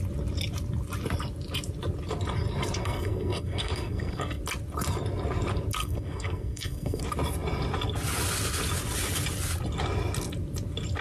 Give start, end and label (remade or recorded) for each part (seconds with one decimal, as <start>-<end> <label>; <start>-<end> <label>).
0.0-2.8 recorded; 2.8-4.4 remade; 4.4-5.8 recorded; 5.8-7.0 remade; 7.0-11.0 recorded